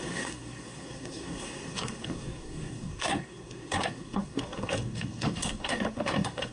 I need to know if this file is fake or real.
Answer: fake